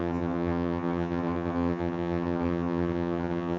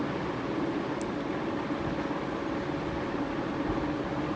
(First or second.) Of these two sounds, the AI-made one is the first